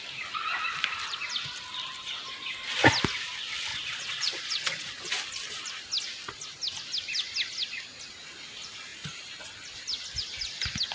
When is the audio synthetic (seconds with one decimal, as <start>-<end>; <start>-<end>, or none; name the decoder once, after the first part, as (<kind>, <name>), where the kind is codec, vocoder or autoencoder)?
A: 3.7-5.1 (vocoder, Vocos)